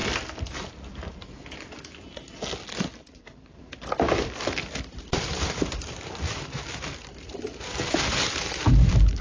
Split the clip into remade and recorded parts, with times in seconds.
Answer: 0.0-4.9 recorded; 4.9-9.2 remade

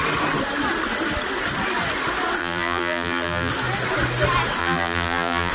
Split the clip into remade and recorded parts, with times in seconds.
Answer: 0.0-2.4 recorded; 2.4-3.5 remade; 3.5-4.6 recorded; 4.6-5.5 remade

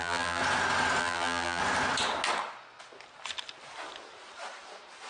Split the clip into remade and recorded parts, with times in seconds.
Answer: 0.0-0.4 remade; 0.4-1.0 recorded; 1.0-1.6 remade; 1.6-5.1 recorded

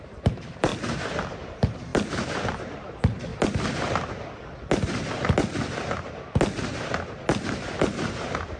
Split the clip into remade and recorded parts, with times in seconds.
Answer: 0.0-0.7 remade; 0.7-1.3 recorded; 1.3-1.9 remade; 1.9-2.5 recorded; 2.5-3.3 remade; 3.3-7.8 recorded; 7.8-8.6 remade